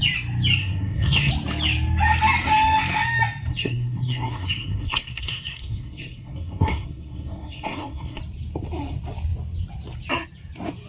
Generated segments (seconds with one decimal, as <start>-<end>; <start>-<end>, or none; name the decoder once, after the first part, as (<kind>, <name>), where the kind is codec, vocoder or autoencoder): 0.6-1.3 (codec, SNAC); 3.5-8.2